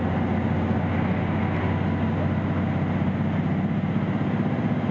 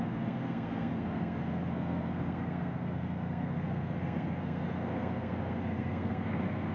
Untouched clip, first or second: first